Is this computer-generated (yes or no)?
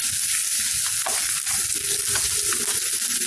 no